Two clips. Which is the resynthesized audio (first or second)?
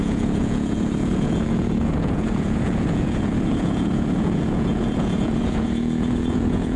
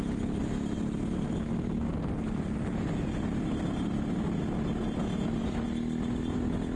first